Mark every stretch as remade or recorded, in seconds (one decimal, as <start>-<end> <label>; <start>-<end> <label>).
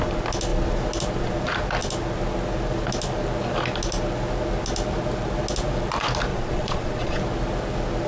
0.0-6.3 recorded; 6.3-7.2 remade; 7.2-8.1 recorded